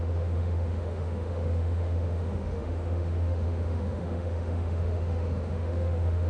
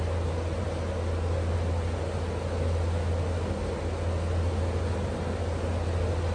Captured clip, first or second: second